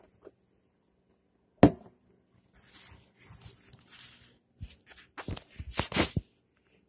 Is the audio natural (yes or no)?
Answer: yes